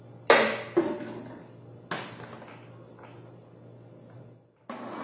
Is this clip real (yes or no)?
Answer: yes